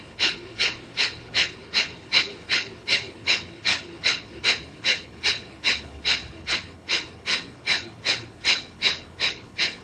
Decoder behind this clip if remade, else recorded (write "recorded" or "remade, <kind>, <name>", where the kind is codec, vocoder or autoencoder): remade, codec, HILCodec